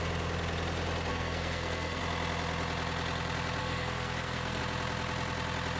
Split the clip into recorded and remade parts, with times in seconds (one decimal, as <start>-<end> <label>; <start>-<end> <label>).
0.0-1.1 recorded; 1.1-2.0 remade; 2.0-3.6 recorded; 3.6-4.6 remade; 4.6-5.8 recorded